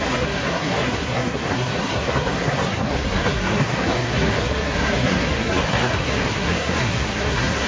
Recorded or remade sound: remade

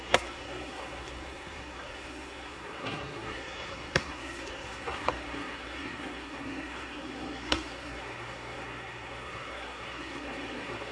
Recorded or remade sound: remade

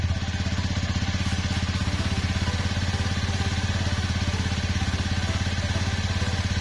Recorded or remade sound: recorded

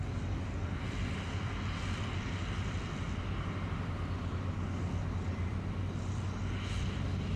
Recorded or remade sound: recorded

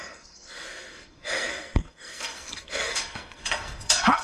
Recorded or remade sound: remade